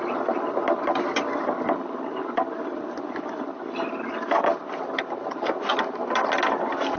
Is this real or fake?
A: real